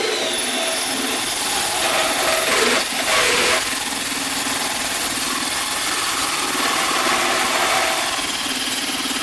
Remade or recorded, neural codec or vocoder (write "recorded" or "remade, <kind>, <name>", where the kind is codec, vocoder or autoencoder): recorded